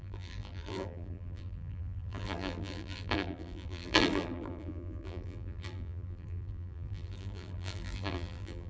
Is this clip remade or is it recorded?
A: remade